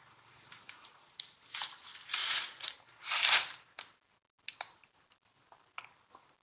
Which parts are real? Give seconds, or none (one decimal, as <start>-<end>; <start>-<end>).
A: 0.0-0.6; 1.1-2.2; 2.7-6.4